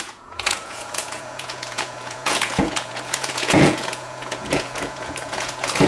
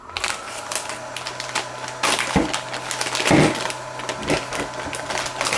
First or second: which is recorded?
second